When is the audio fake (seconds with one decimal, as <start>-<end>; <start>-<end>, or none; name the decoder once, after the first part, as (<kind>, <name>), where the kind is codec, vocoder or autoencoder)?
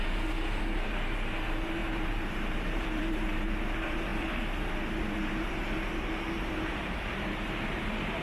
0.0-8.2 (vocoder, BigVGAN v2)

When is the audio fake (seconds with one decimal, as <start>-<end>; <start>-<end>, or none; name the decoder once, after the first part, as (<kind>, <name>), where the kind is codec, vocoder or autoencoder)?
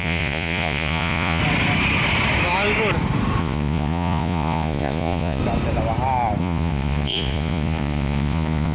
0.0-1.4 (vocoder, Vocos); 3.4-5.4; 6.4-8.7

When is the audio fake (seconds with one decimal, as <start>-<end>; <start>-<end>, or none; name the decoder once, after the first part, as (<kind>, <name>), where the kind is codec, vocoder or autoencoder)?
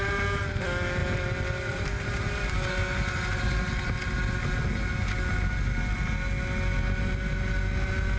1.0-2.7 (vocoder, BigVGAN v2)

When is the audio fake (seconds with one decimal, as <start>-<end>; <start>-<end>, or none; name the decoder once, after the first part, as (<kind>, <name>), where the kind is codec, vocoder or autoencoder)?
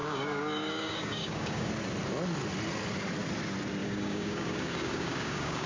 0.0-1.7 (codec, DAC); 3.8-5.7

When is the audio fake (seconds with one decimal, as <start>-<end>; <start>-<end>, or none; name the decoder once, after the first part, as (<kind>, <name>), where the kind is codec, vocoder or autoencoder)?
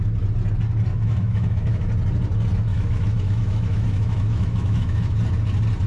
0.9-1.9 (autoencoder, DAC-VAE); 2.7-5.1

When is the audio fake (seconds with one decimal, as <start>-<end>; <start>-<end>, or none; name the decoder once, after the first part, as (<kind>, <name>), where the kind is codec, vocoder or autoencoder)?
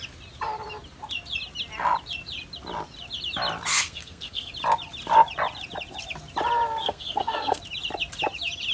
3.7-4.5 (codec, SNAC); 6.8-7.6